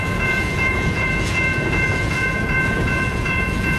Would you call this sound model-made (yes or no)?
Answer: yes